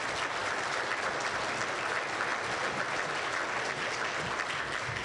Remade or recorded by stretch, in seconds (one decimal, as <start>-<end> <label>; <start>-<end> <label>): 0.0-5.0 recorded